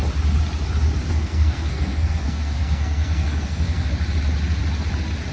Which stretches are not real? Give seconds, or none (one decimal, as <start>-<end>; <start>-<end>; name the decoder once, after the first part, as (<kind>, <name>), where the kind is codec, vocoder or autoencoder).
1.1-3.9 (codec, SNAC)